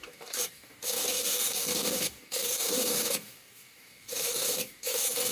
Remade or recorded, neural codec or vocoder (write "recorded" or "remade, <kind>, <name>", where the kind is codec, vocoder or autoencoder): remade, codec, DAC